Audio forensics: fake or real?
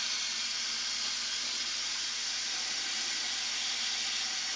real